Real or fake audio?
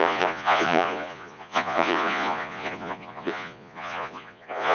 fake